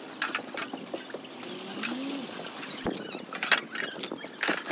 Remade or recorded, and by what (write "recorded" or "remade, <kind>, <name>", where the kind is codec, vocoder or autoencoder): recorded